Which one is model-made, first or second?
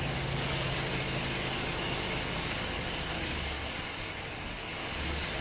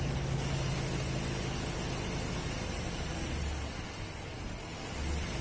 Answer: first